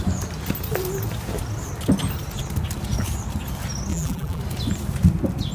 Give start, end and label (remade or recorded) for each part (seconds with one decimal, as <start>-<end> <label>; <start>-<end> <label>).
0.0-3.9 recorded; 3.9-4.4 remade; 4.4-5.5 recorded